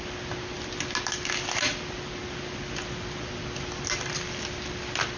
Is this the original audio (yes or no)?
yes